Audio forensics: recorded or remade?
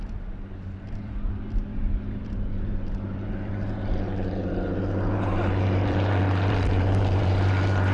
remade